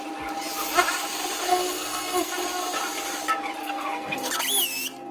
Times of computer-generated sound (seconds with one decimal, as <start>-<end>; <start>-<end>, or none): 1.5-2.3; 3.6-4.3